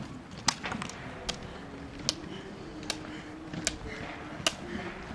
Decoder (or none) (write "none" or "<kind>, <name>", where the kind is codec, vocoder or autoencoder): none